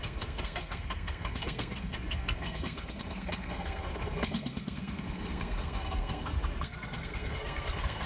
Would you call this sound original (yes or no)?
no